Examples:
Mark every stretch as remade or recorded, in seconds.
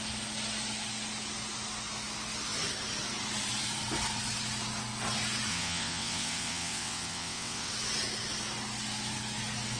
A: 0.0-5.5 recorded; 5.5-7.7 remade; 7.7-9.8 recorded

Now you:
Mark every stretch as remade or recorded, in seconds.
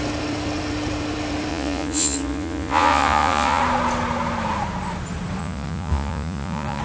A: 0.0-1.5 recorded; 1.5-3.6 remade; 3.6-5.4 recorded; 5.4-6.8 remade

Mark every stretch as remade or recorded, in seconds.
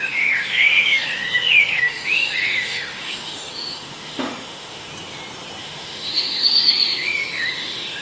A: 0.0-4.9 remade; 4.9-5.6 recorded; 5.6-8.0 remade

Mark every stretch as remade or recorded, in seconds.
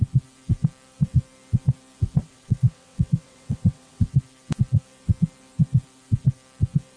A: 0.0-2.2 recorded; 2.2-4.0 remade; 4.0-7.0 recorded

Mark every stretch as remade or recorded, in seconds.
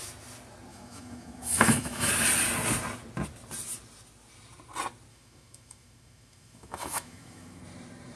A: 0.0-0.7 recorded; 0.7-2.1 remade; 2.1-5.1 recorded; 5.1-7.6 remade; 7.6-8.2 recorded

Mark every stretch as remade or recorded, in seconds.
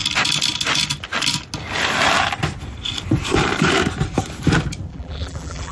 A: 0.0-4.9 recorded; 4.9-5.7 remade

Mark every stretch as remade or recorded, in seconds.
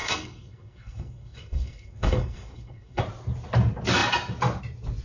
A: 0.0-3.0 remade; 3.0-5.0 recorded